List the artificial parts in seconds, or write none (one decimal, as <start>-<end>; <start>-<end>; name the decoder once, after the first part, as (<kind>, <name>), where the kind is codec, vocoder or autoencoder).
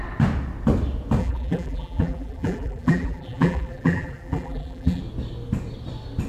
1.2-5.0 (vocoder, BigVGAN v2)